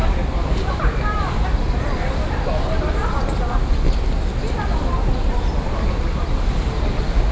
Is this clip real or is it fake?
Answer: real